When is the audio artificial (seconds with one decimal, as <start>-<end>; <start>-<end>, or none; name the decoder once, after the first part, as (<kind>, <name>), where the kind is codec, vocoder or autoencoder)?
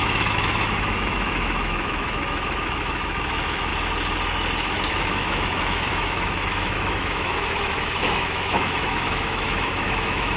0.0-3.7 (autoencoder, DAC-VAE); 4.9-10.4